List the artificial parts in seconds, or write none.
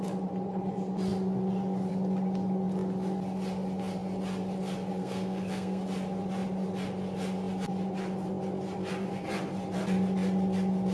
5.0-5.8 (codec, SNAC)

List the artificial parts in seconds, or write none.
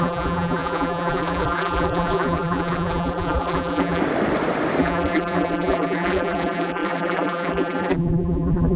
0.0-4.0 (vocoder, BigVGAN v2); 4.8-8.8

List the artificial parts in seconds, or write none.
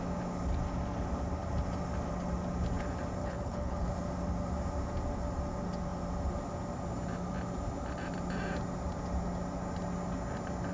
3.2-3.9 (codec, HILCodec)